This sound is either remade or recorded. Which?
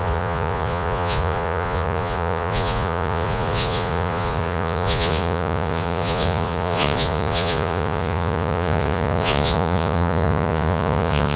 remade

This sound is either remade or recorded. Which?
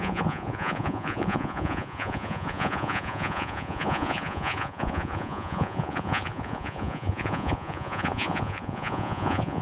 remade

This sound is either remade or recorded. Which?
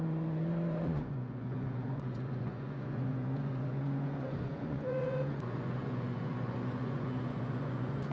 remade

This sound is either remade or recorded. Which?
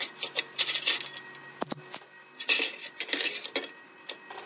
recorded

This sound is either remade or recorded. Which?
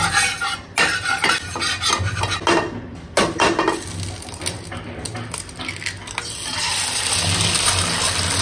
recorded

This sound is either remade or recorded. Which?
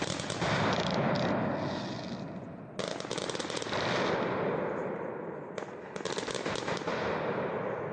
recorded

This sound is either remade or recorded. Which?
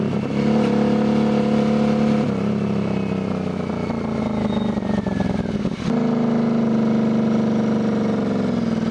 recorded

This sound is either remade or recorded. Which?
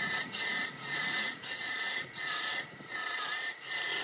remade